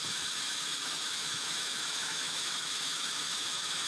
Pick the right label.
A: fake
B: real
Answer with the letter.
A